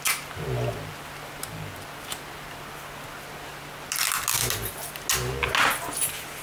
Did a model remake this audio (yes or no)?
no